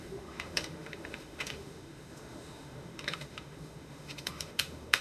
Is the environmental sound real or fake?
fake